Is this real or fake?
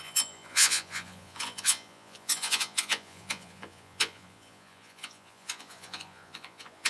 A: fake